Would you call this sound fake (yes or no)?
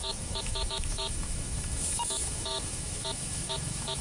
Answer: yes